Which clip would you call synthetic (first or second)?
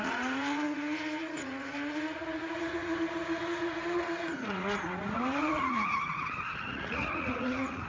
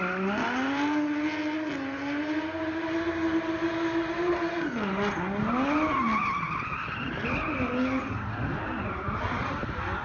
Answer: first